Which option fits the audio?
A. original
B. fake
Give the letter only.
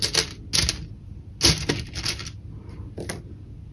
A